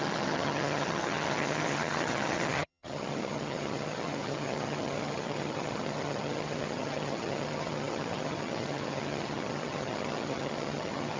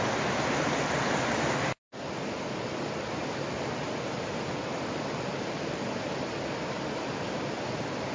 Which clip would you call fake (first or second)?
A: first